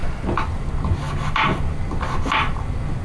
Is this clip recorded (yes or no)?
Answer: yes